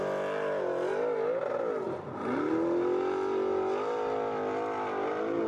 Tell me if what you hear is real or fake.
real